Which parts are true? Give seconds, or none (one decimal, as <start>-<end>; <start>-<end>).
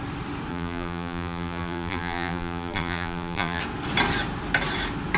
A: 0.0-0.5; 3.6-5.2